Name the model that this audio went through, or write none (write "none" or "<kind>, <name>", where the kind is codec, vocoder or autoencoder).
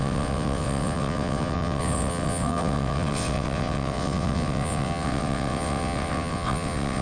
vocoder, WaveNeXt